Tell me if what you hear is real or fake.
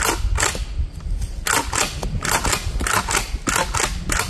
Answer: real